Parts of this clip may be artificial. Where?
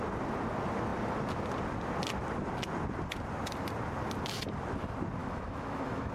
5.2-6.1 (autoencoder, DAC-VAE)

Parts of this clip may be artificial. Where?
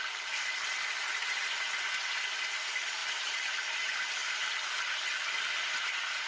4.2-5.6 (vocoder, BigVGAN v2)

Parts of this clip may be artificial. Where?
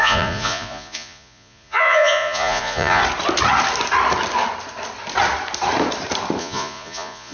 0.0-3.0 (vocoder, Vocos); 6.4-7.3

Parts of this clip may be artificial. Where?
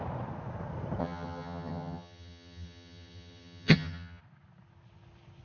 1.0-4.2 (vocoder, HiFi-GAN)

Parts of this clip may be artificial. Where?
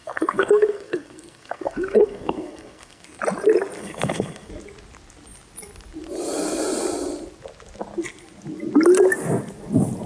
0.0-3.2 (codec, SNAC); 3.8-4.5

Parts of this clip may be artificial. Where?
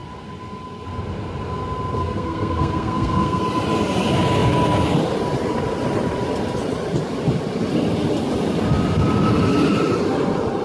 2.0-3.4 (codec, SNAC)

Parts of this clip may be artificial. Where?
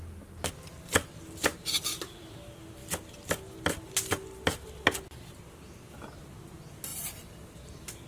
6.9-8.1 (vocoder, BigVGAN v2)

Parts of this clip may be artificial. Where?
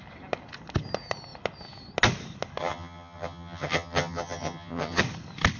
2.6-5.0 (vocoder, HiFi-GAN)